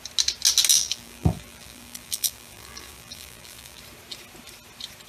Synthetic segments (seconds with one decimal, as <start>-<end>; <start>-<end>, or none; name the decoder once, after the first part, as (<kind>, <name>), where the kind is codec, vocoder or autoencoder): 0.7-3.8 (vocoder, BigVGAN v2)